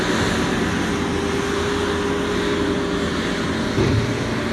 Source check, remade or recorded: recorded